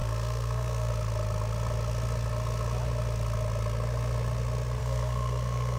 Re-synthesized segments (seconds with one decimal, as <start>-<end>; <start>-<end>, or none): 0.0-0.9; 4.8-5.8